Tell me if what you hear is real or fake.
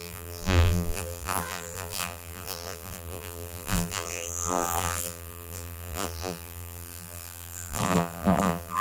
fake